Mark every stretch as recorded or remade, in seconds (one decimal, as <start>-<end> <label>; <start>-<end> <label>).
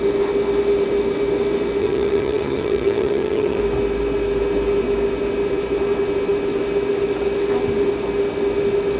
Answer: 0.0-1.8 recorded; 1.8-3.6 remade; 3.6-9.0 recorded